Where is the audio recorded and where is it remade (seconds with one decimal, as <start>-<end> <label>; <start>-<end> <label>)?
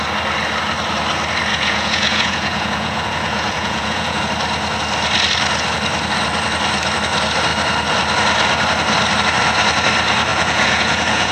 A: 0.0-1.5 recorded; 1.5-4.2 remade; 4.2-10.3 recorded; 10.3-11.3 remade